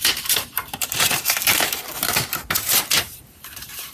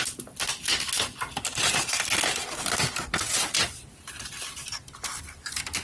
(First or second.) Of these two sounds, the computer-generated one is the first